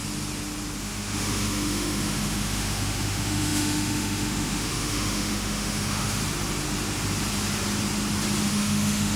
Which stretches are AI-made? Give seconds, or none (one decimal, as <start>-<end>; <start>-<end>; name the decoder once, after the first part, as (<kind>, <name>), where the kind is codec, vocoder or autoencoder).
0.8-6.2 (autoencoder, DAC-VAE); 8.5-9.2